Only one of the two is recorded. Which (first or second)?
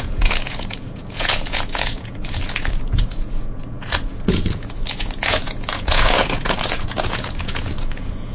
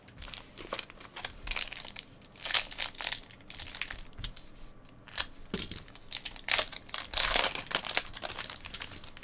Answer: second